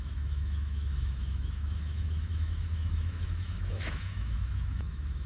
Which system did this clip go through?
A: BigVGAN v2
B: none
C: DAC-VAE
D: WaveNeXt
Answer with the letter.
C